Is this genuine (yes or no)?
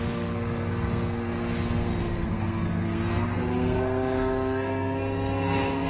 no